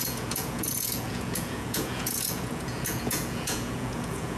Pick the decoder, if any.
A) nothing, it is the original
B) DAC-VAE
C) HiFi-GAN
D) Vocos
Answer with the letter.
D